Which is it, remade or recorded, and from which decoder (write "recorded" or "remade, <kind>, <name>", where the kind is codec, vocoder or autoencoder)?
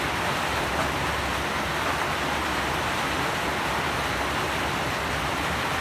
recorded